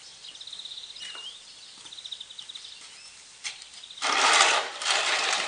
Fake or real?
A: real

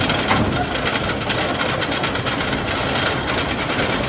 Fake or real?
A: fake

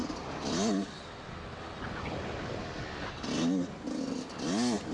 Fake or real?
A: real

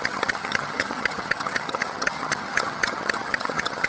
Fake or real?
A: fake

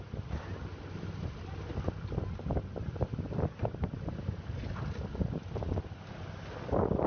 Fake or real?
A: real